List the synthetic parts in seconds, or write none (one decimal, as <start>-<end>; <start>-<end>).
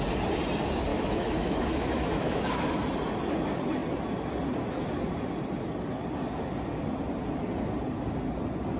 0.9-2.8